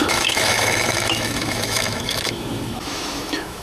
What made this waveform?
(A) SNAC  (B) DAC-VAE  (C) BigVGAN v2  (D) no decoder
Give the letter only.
B